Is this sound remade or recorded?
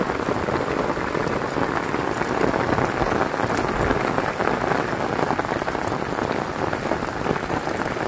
recorded